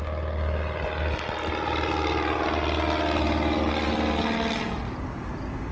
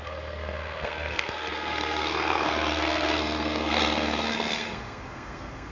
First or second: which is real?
first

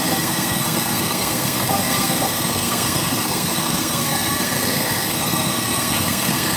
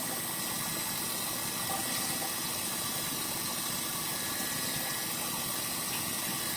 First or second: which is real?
second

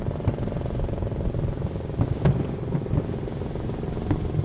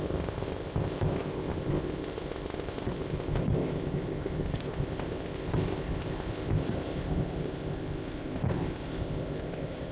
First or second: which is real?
first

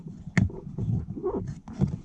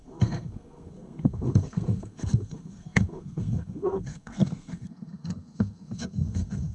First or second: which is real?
first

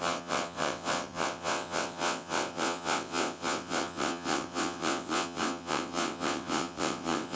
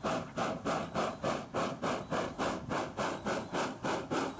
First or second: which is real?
second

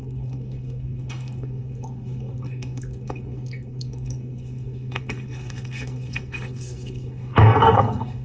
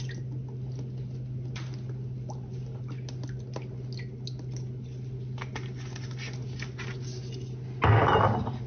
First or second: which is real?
second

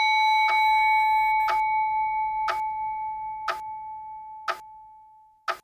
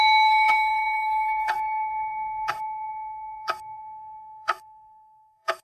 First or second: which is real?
first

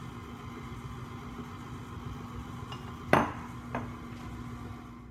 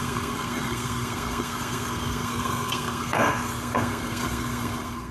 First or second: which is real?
first